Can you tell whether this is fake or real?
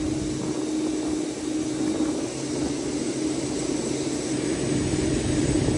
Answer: real